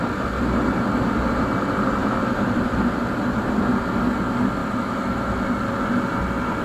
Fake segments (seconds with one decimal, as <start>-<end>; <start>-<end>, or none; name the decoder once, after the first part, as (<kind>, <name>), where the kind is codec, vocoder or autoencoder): 4.6-5.4 (autoencoder, DAC-VAE)